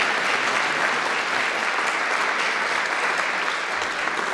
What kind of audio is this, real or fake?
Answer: real